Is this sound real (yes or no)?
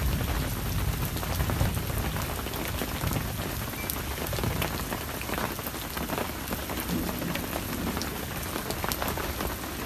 yes